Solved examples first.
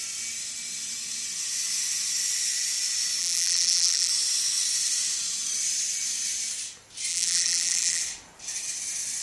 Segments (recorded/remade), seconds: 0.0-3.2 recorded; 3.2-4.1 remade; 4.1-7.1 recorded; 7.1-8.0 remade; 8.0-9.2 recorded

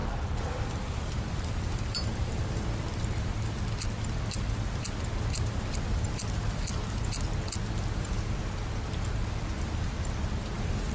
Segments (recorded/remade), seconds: 0.0-2.5 remade; 2.5-10.9 recorded

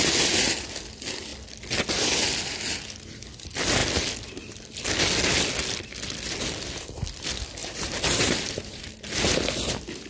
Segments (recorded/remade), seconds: 0.0-7.6 recorded; 7.6-8.9 remade; 8.9-10.1 recorded

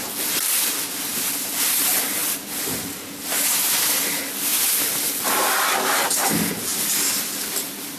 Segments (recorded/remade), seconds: 0.0-8.0 recorded